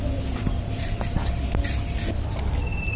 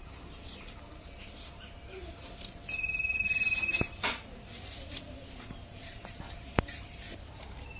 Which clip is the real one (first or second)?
first